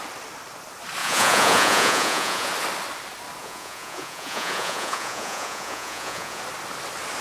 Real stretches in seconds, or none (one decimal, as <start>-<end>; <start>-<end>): 0.0-1.0; 2.5-3.4; 6.4-7.2